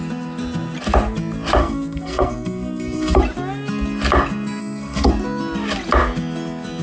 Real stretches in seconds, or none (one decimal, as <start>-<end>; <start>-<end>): 0.0-1.6; 3.2-4.6; 5.1-6.8